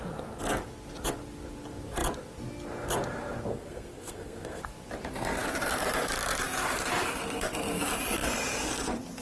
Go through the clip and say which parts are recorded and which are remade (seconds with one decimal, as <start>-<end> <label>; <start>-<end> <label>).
0.0-3.5 recorded; 3.5-4.6 remade; 4.6-9.2 recorded